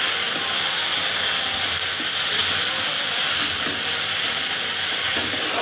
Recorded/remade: recorded